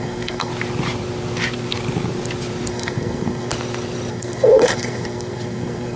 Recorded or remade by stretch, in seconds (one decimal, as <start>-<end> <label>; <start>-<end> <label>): 0.0-0.5 remade; 0.5-2.7 recorded; 2.7-3.5 remade; 3.5-4.1 recorded; 4.1-6.0 remade